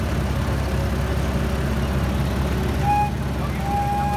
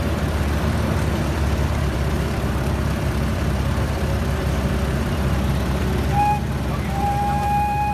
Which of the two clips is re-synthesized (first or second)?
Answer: second